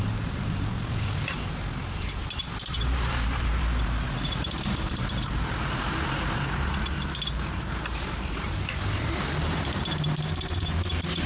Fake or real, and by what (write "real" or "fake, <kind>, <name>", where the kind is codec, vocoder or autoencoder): fake, vocoder, BigVGAN v2